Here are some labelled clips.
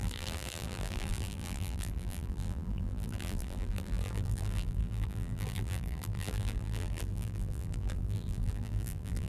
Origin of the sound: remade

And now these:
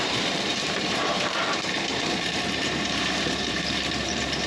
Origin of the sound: remade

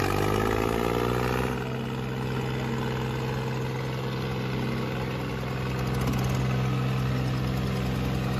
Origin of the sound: recorded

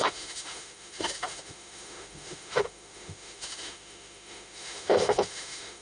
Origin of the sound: remade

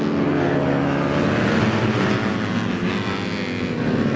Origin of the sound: recorded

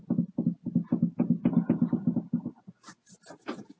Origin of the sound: recorded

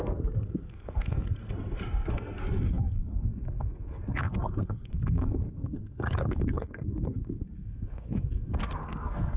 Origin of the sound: remade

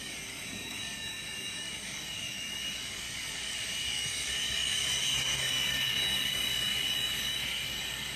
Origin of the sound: remade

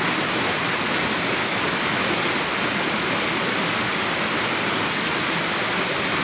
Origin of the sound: recorded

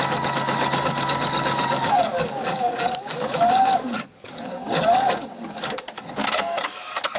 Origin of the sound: remade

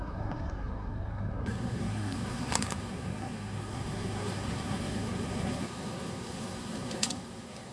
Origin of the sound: remade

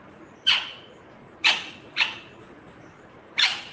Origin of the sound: remade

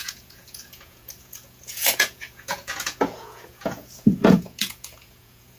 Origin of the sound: remade